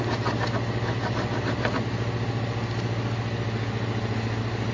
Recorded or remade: recorded